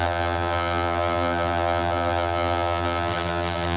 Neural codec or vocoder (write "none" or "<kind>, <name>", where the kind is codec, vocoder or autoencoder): vocoder, BigVGAN v2